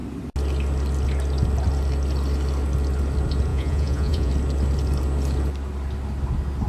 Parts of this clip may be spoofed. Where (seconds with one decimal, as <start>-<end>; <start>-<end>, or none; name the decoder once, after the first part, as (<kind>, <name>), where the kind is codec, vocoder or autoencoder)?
3.5-4.3 (vocoder, Vocos)